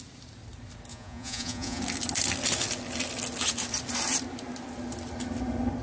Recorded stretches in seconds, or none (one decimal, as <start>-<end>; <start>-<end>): 0.0-0.9; 1.8-5.8